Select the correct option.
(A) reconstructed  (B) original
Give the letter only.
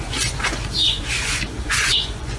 A